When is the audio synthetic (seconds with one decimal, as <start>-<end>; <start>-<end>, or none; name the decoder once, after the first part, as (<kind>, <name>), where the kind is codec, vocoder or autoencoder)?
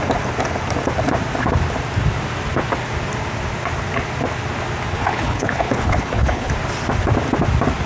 4.9-6.5 (codec, HILCodec)